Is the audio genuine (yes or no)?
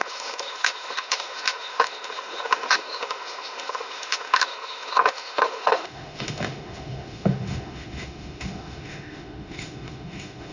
no